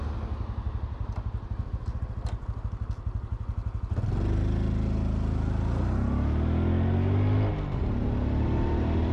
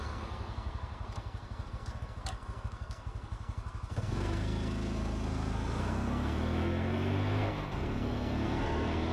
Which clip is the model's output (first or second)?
second